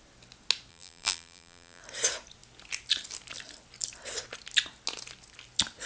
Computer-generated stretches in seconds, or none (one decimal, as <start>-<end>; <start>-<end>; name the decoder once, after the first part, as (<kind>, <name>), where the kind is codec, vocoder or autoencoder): 0.7-1.8 (vocoder, BigVGAN v2)